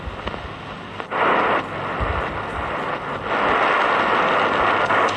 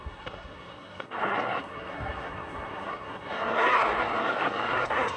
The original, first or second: first